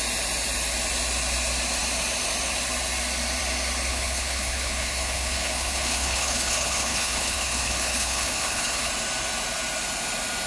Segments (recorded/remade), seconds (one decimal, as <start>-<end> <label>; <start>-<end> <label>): 0.0-3.9 recorded; 3.9-8.9 remade; 8.9-10.5 recorded